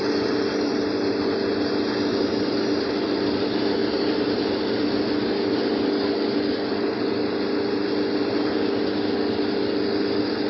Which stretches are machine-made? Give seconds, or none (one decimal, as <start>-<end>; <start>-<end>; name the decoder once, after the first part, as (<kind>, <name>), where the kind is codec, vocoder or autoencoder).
3.8-4.6 (vocoder, BigVGAN v2)